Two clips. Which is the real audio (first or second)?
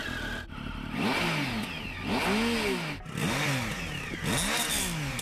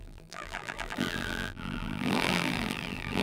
first